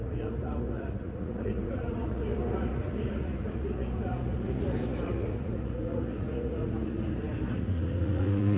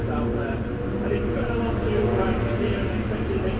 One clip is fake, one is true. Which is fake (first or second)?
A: first